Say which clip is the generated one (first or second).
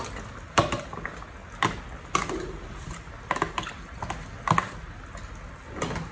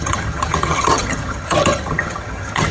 second